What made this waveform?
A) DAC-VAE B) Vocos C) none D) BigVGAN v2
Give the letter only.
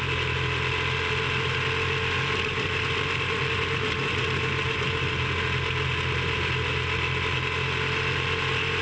C